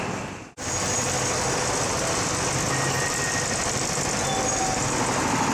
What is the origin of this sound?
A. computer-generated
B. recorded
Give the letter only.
B